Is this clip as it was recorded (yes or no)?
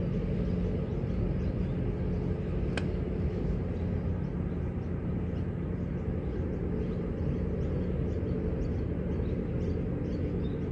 yes